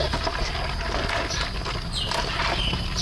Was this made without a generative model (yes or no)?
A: yes